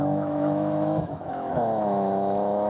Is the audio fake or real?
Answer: fake